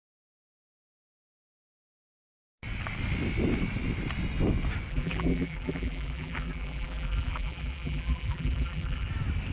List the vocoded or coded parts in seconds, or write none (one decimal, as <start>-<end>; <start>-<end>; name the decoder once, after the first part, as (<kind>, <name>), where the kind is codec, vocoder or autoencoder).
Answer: 4.9-9.1 (vocoder, BigVGAN v2)